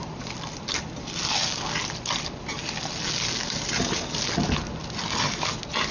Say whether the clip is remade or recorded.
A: recorded